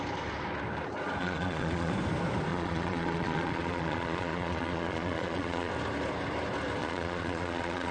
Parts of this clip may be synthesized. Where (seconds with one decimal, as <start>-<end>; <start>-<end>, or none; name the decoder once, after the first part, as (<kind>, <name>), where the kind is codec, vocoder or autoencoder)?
1.2-1.9 (vocoder, Vocos); 2.5-5.7; 6.8-7.9